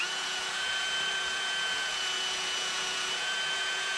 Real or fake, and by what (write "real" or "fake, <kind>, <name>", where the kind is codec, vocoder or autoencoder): fake, vocoder, Vocos